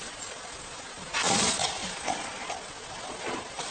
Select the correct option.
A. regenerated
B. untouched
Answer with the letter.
A